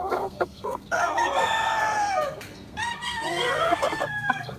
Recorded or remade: remade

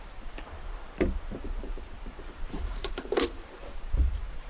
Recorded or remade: remade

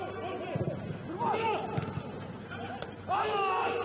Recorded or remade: recorded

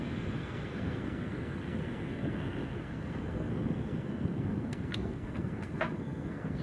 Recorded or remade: remade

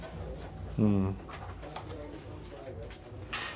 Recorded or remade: recorded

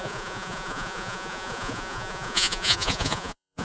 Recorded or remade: remade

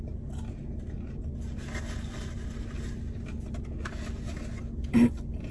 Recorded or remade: recorded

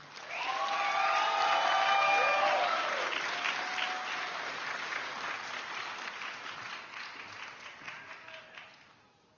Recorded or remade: recorded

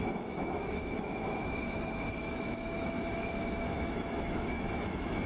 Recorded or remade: remade